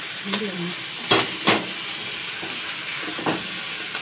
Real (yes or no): yes